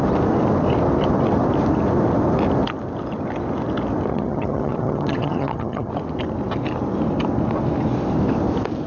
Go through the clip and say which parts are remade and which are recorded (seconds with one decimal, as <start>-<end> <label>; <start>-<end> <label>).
0.0-4.1 recorded; 4.1-5.9 remade; 5.9-8.9 recorded